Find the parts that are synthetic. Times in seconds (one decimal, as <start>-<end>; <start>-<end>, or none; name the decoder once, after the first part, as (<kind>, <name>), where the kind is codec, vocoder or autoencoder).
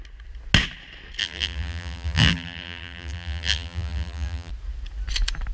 1.2-4.5 (vocoder, BigVGAN v2)